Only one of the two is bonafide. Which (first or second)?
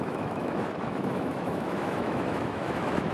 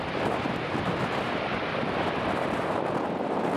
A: second